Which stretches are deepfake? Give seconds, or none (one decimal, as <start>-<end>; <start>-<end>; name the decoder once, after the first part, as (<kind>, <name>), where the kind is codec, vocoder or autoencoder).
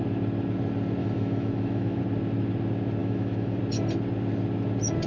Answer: 1.0-2.0 (autoencoder, DAC-VAE); 3.0-3.6